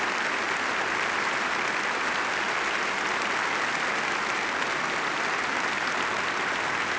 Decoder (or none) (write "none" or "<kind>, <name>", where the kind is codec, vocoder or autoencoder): none